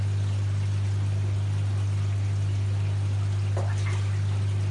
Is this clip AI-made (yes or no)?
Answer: no